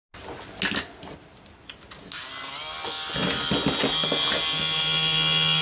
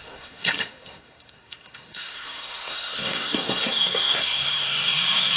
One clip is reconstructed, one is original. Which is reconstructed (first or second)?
second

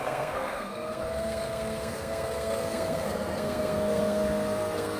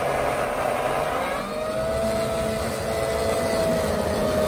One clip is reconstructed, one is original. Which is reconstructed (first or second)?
first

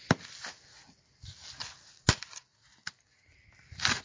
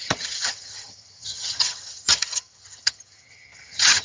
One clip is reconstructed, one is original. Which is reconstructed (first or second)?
second